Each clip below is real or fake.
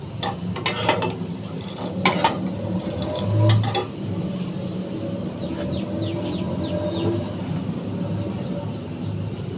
real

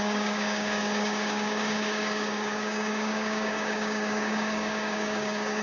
fake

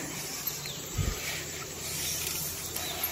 fake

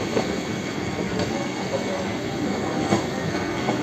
fake